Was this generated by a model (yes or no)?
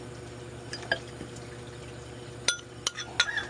no